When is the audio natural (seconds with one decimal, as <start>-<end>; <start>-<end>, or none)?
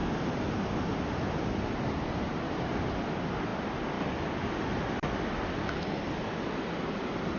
0.0-7.4